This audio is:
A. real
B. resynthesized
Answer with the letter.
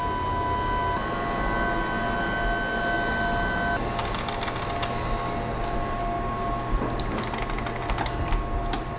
A